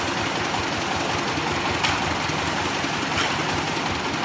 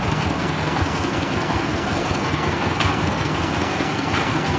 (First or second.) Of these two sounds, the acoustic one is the first